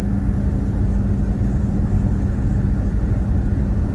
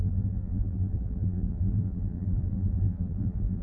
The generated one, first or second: second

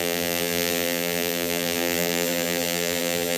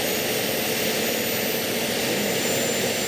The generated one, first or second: first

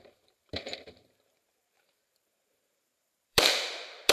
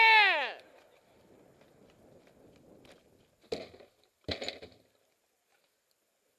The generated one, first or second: first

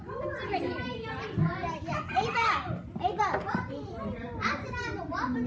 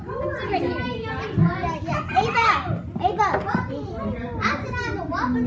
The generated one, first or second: first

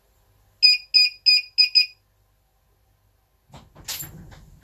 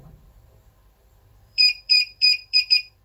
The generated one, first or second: second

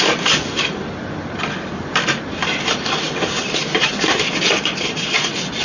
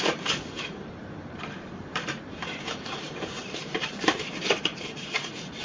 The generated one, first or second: second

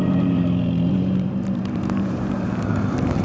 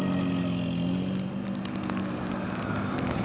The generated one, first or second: first